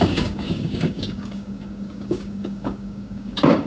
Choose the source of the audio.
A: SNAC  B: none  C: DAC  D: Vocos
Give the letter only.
C